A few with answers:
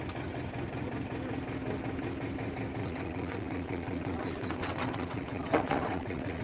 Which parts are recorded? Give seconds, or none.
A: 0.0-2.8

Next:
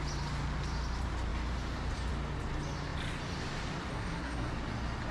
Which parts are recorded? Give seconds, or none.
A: 0.0-3.9; 4.5-5.1

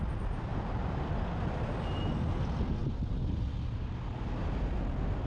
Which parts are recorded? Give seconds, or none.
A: 0.0-0.5; 1.1-5.3